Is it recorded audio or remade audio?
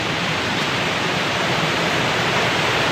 remade